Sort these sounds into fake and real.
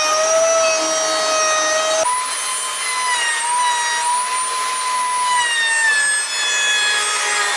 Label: real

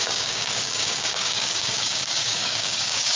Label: fake